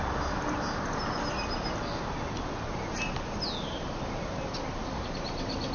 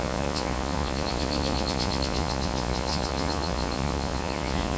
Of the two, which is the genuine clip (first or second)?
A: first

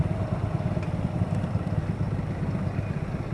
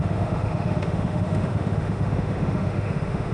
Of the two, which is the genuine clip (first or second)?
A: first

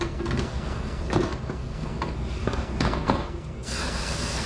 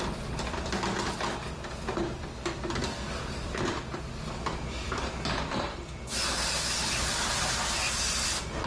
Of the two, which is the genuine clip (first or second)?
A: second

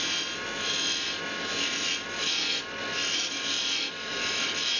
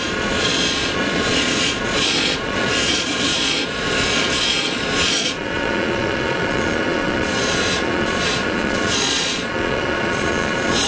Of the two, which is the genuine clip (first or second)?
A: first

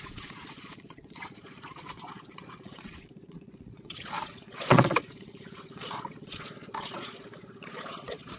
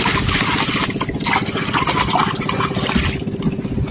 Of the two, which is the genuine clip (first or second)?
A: second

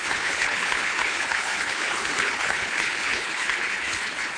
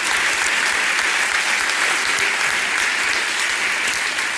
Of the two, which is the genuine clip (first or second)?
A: second